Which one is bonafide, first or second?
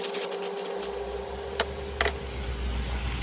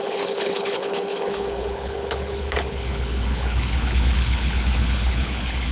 first